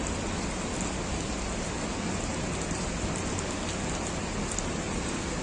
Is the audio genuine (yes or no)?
yes